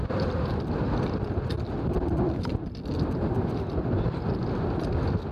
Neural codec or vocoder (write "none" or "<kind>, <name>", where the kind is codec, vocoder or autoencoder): none